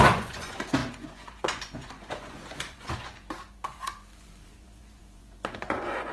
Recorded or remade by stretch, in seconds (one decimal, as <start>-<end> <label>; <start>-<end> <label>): 0.0-6.1 remade